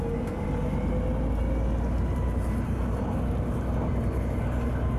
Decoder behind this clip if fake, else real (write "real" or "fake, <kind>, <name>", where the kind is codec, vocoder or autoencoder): real